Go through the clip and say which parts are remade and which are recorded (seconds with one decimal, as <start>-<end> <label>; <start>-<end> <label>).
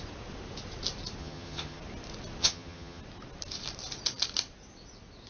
0.0-1.2 recorded; 1.2-1.8 remade; 1.8-2.4 recorded; 2.4-3.0 remade; 3.0-5.3 recorded